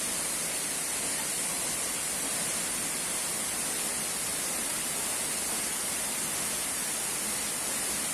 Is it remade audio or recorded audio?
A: recorded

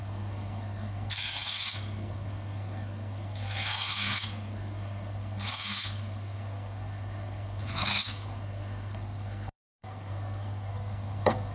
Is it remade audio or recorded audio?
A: remade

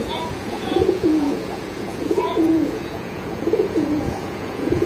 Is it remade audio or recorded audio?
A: remade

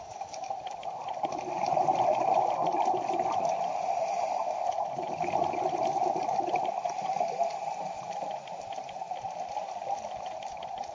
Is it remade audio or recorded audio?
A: recorded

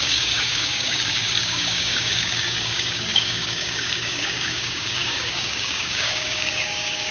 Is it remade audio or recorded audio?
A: remade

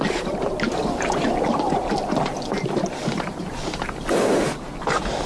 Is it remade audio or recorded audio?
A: recorded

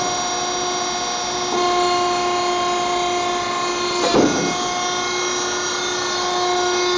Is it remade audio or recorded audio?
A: recorded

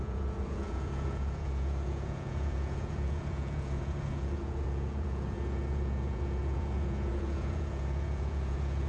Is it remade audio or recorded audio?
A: remade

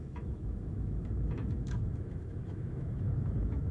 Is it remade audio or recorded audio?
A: remade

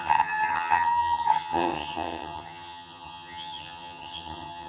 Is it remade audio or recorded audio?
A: remade